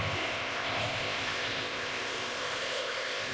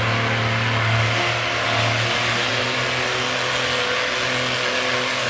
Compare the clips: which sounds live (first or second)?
second